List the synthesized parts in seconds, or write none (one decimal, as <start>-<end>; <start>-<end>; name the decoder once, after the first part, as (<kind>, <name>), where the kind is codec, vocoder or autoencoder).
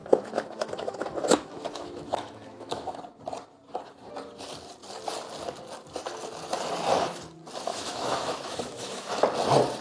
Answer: 0.0-3.0 (autoencoder, DAC-VAE); 7.7-9.1